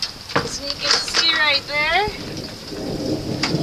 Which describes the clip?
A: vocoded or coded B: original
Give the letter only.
B